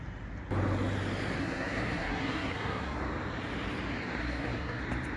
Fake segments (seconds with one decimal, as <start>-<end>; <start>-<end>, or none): 1.4-3.0; 4.2-4.8